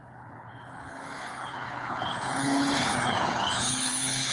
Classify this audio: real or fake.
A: fake